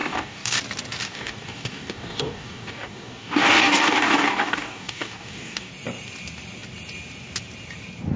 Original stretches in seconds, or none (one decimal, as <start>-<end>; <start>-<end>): 0.6-1.0; 5.7-8.2